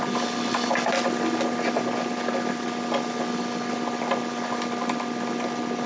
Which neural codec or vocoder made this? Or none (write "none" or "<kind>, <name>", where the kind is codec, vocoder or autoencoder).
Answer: none